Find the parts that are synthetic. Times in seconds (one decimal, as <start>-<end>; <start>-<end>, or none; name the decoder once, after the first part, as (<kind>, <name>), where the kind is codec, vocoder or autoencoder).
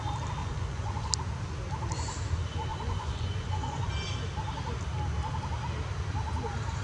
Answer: 0.4-1.1 (vocoder, Vocos); 2.7-3.9